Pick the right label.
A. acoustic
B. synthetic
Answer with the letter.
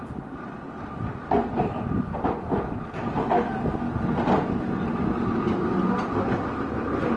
A